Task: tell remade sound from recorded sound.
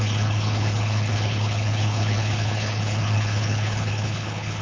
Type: remade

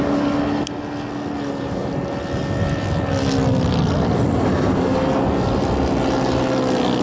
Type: recorded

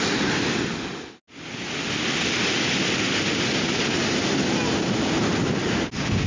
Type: recorded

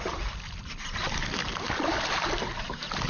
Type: recorded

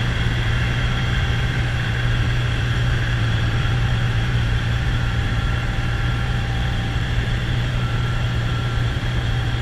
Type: remade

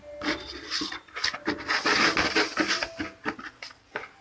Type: recorded